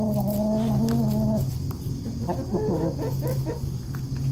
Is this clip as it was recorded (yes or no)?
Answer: yes